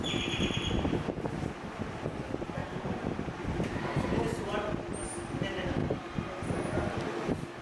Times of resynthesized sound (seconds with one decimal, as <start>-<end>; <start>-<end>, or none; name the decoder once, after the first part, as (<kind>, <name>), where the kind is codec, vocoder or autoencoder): 2.6-3.3 (vocoder, BigVGAN v2); 4.3-4.8; 5.8-6.4